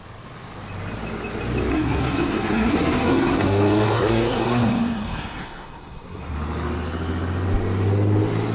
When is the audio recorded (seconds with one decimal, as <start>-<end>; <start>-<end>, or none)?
0.0-1.7; 6.3-8.5